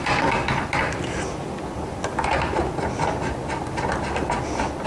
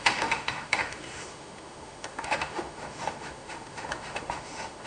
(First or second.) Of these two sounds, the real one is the first